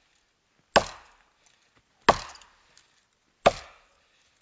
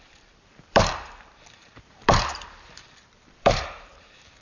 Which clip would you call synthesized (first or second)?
second